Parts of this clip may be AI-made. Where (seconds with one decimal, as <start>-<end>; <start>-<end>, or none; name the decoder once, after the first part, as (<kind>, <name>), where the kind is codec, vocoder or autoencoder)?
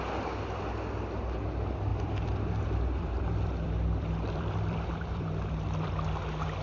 1.9-5.9 (vocoder, BigVGAN v2)